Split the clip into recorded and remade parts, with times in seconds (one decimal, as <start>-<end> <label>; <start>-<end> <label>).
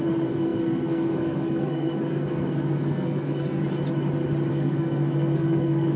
0.0-3.6 remade; 3.6-4.5 recorded; 4.5-6.0 remade